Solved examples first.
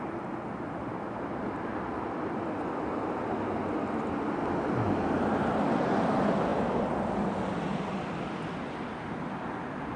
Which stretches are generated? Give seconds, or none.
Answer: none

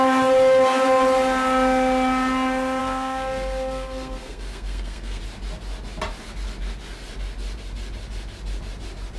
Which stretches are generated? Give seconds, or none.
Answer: 2.8-5.2

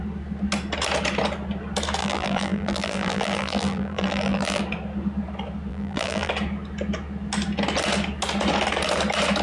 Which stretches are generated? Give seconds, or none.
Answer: 2.0-4.6; 5.7-6.3

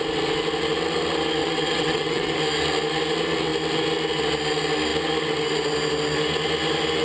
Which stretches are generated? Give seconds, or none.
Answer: 1.4-2.3

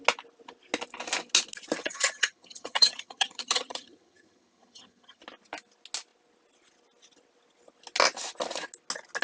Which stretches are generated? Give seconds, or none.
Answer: 1.8-5.2

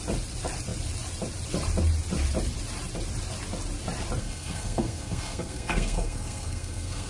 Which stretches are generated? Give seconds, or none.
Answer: 4.2-7.1

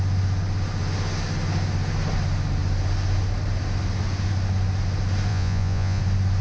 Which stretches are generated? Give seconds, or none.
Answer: 5.3-6.0

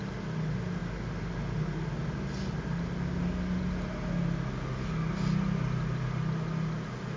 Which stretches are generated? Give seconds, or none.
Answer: none